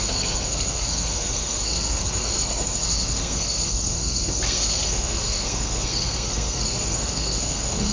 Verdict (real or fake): fake